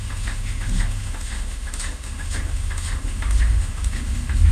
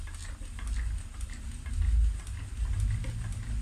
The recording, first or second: second